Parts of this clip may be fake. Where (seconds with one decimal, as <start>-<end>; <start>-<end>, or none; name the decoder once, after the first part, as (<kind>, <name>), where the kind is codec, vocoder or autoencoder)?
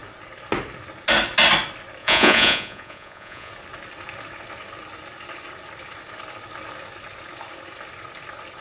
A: 2.0-3.5 (vocoder, Vocos)